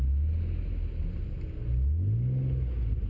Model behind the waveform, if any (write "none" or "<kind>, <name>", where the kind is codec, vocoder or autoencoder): none